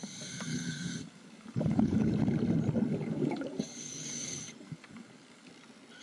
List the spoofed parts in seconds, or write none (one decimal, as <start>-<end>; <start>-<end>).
0.5-2.1; 2.9-5.5